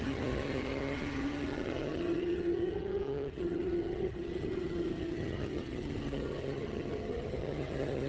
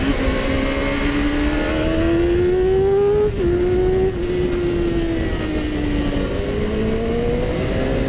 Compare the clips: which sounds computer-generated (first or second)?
first